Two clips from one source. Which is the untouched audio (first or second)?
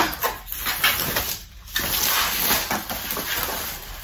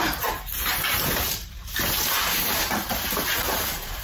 first